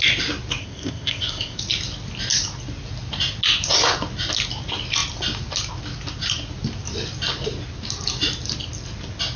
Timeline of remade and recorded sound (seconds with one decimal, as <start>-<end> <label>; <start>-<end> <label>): 0.0-0.6 recorded; 0.6-1.6 remade; 1.6-9.4 recorded